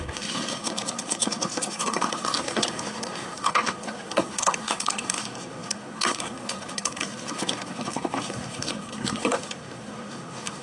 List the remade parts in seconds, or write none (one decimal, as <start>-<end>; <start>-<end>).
0.0-10.6